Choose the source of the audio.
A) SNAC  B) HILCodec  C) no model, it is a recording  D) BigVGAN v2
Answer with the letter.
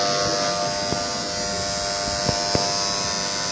C